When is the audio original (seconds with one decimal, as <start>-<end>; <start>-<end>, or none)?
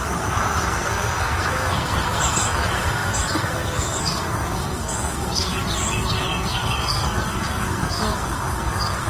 none